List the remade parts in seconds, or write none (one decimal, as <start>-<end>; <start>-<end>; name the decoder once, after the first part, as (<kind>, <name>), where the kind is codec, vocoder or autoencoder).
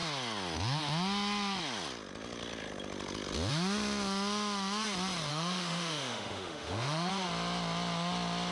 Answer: 5.3-7.1 (autoencoder, DAC-VAE)